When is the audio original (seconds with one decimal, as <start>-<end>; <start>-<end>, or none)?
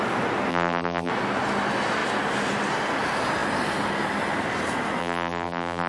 0.0-0.5; 1.1-5.0